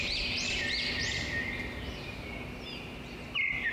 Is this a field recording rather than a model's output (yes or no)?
yes